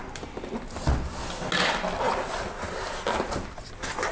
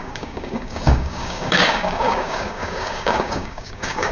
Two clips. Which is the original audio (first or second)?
first